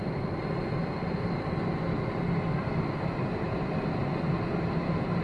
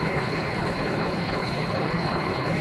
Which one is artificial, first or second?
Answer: second